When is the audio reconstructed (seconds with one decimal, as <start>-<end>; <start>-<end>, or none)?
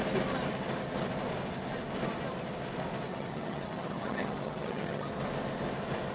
3.1-5.1